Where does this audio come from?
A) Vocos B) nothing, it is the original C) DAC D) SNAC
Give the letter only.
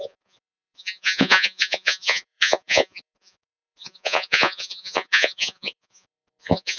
A